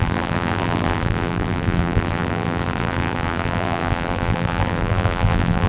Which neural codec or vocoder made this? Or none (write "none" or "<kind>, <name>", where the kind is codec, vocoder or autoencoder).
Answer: vocoder, BigVGAN v2